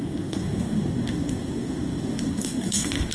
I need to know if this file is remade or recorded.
remade